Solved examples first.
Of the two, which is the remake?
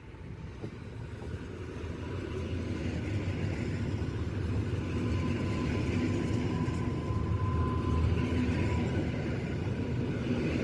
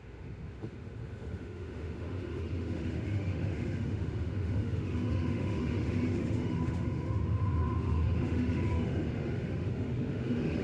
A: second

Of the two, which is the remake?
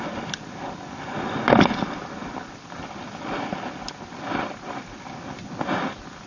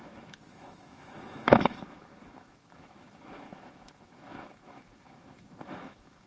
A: second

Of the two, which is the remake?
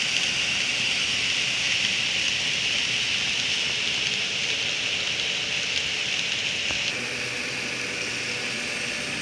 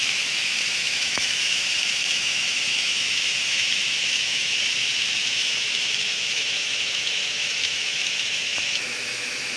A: second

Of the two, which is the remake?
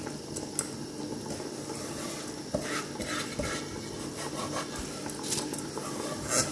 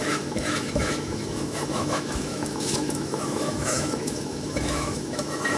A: second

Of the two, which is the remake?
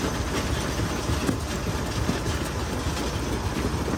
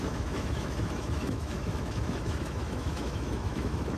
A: second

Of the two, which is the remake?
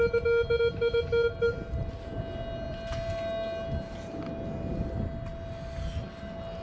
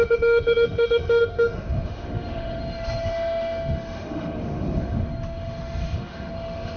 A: second